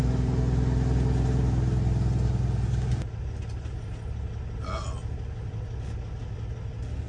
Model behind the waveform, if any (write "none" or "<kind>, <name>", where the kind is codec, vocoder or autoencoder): none